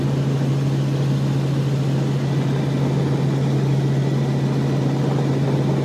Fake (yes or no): no